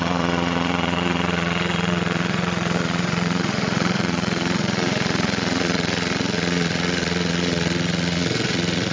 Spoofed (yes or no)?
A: yes